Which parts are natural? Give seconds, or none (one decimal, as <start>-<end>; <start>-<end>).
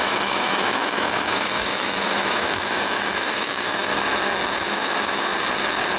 3.9-4.5; 5.3-6.0